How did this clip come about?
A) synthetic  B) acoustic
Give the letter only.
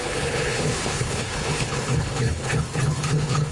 A